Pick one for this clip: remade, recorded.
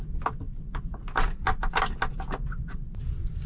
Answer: recorded